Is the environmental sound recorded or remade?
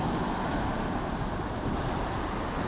recorded